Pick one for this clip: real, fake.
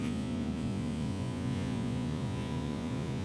fake